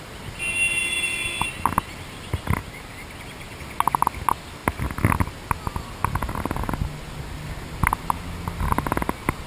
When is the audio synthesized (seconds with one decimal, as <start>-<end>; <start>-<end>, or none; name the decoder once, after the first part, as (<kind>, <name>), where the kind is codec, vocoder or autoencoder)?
none